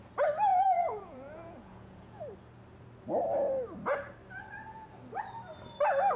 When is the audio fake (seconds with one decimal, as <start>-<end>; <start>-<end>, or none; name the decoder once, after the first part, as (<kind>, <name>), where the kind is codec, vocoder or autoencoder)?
0.5-2.2 (vocoder, Vocos)